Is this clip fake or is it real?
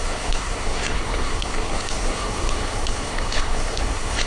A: fake